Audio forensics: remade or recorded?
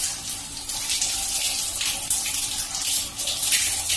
recorded